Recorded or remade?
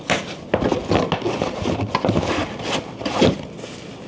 recorded